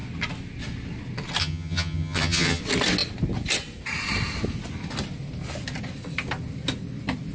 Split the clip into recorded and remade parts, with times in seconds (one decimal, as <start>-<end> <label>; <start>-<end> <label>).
0.0-1.4 recorded; 1.4-2.6 remade; 2.6-7.3 recorded